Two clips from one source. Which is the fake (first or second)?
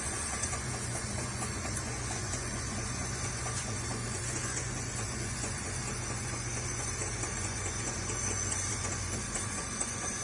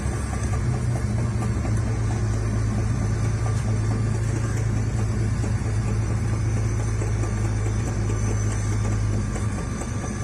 first